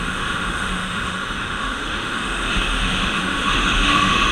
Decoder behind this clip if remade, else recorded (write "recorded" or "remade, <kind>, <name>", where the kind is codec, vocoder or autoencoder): remade, autoencoder, DAC-VAE